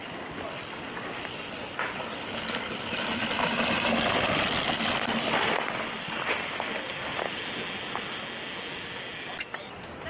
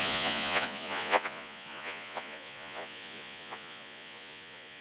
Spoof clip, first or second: second